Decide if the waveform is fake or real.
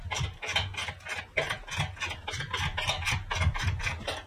real